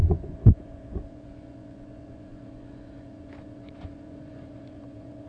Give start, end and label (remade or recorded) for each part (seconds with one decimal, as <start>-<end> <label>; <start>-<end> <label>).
0.0-5.3 remade